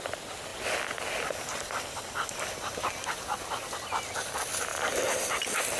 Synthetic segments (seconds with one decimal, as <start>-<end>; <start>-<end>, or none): none